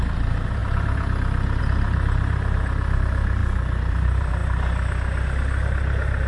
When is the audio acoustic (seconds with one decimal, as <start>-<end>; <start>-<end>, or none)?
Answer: 0.6-1.6; 3.4-3.9; 4.4-6.3